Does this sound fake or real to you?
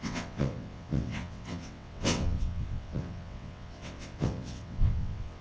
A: fake